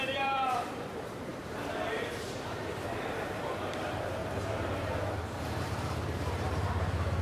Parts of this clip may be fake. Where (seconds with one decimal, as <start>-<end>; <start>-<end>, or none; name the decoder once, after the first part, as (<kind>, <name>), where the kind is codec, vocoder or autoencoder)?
0.0-4.2 (vocoder, BigVGAN v2); 5.6-7.2